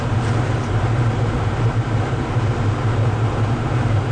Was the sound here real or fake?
fake